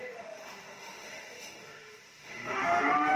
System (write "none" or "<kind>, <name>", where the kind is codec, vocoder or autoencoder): autoencoder, DAC-VAE